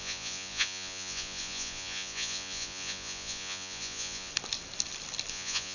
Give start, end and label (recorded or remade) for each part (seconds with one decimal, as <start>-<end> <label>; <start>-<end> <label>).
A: 0.0-4.3 remade; 4.3-5.3 recorded; 5.3-5.7 remade